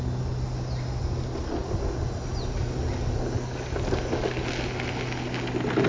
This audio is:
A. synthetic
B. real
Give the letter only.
B